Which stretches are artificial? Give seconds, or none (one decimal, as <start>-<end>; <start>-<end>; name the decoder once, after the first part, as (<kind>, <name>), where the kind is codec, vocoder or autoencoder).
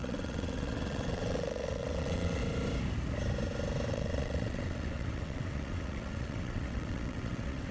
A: 0.0-2.4 (vocoder, WaveNeXt); 3.9-7.7